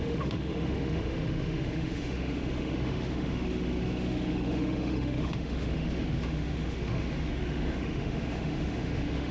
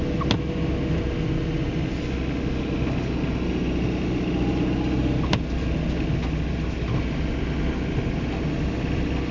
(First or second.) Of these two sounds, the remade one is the first